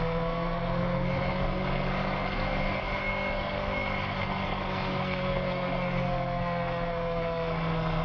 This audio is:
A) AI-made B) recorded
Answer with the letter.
A